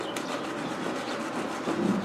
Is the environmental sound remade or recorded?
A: remade